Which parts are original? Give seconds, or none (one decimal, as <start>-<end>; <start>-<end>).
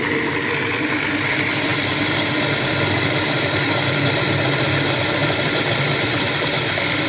0.0-5.2; 6.5-7.1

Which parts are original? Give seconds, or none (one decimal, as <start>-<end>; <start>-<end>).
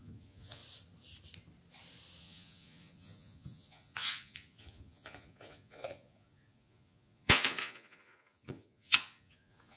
0.6-2.2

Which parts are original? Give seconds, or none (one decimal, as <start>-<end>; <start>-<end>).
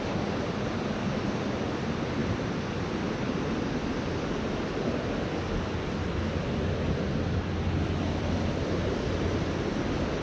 0.0-10.2